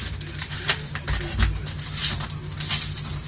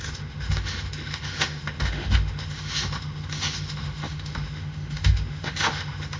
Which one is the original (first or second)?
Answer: first